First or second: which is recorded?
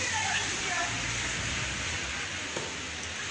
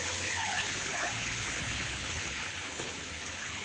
first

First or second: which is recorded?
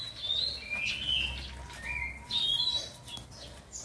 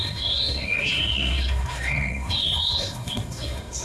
first